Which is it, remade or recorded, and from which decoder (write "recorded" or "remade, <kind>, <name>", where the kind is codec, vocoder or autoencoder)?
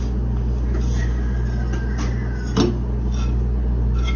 recorded